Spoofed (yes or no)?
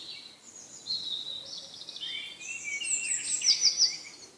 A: no